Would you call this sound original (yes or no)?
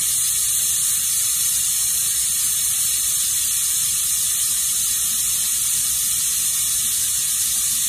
yes